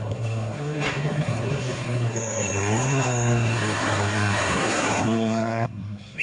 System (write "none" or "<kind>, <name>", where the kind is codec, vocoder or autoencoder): codec, SNAC